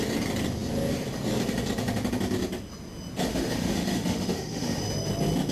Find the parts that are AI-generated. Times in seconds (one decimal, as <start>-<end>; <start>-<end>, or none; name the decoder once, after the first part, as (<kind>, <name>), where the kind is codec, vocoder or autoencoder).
3.3-4.8 (autoencoder, DAC-VAE)